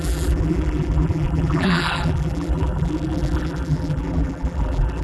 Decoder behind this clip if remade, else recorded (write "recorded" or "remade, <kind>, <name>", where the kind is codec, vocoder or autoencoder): remade, vocoder, BigVGAN v2